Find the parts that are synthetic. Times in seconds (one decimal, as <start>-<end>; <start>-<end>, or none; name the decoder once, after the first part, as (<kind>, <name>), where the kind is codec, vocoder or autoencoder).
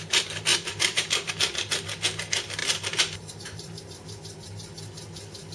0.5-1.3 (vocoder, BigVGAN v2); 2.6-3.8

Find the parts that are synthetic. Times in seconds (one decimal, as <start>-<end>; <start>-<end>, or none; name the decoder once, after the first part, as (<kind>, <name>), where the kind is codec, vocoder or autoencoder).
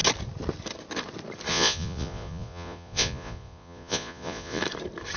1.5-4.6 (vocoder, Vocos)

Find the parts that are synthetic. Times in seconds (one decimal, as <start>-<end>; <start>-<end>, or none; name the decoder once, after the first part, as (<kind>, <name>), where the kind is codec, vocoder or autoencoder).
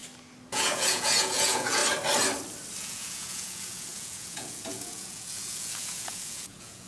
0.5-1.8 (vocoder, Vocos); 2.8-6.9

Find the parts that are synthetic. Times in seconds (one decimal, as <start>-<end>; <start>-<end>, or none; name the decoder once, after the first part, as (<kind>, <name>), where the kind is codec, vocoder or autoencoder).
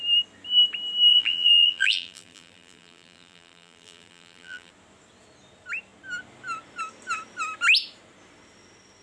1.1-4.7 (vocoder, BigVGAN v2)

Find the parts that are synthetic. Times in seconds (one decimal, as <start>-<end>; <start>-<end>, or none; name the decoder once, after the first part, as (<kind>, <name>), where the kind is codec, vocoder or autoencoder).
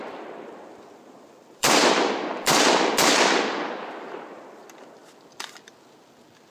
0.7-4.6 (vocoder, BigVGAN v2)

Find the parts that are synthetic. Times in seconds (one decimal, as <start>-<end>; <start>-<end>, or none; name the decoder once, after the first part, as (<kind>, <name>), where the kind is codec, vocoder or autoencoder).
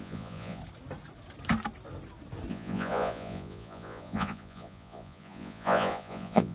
0.0-0.6 (vocoder, Vocos); 2.5-6.5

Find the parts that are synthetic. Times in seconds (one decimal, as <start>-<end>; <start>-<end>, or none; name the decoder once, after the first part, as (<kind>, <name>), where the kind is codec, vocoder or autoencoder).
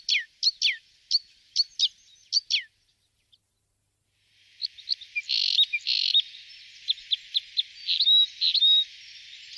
none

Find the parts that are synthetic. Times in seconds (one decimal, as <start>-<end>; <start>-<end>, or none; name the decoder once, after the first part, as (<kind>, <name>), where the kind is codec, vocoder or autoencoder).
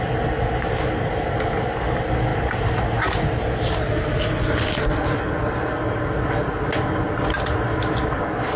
none